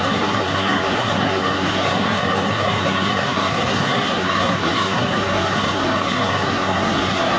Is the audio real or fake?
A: fake